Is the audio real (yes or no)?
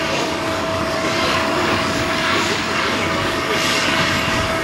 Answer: no